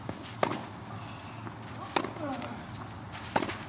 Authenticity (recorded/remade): recorded